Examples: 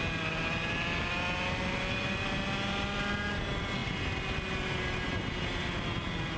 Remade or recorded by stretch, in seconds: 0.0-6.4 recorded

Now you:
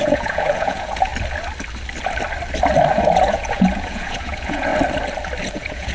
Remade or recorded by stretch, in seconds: 0.0-1.1 remade; 1.1-2.9 recorded; 2.9-4.7 remade; 4.7-5.5 recorded; 5.5-5.9 remade

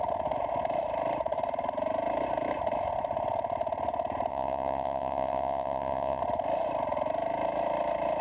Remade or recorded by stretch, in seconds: 0.0-4.3 recorded; 4.3-6.2 remade; 6.2-8.2 recorded

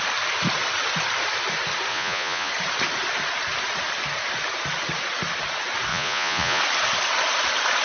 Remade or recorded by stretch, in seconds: 0.0-1.9 recorded; 1.9-2.5 remade; 2.5-5.9 recorded; 5.9-6.6 remade; 6.6-7.8 recorded

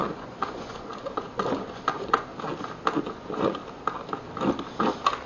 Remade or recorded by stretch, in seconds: 0.0-2.3 remade; 2.3-3.0 recorded; 3.0-3.6 remade; 3.6-5.3 recorded

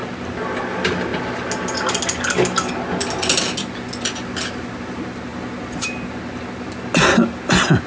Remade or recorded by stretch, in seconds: 0.0-7.9 recorded

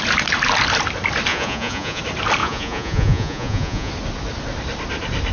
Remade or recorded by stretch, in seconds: 0.0-1.3 recorded; 1.3-2.0 remade; 2.0-2.4 recorded; 2.4-3.9 remade; 3.9-5.3 recorded

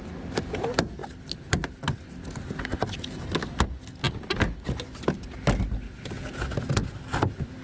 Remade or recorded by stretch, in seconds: 0.0-7.6 recorded